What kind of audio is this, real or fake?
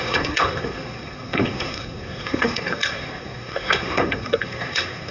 fake